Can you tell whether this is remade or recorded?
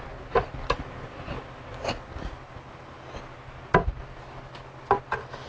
recorded